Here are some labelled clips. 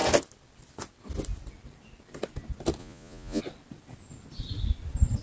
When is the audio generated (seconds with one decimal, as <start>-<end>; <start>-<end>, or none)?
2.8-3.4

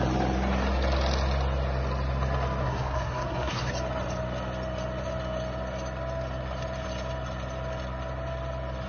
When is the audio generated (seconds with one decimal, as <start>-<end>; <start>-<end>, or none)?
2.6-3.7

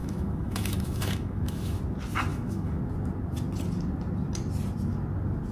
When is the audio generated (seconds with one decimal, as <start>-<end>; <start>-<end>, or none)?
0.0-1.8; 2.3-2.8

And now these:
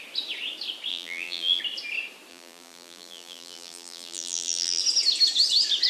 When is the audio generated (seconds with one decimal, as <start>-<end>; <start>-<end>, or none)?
0.9-1.6; 2.3-4.8

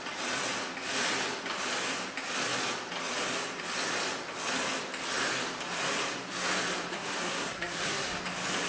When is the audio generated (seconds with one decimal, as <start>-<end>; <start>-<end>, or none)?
6.9-8.2

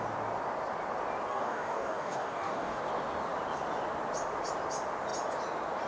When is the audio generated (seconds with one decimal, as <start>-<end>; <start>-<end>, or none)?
1.3-2.8

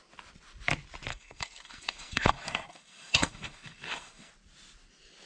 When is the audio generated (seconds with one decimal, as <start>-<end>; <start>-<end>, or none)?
1.1-4.3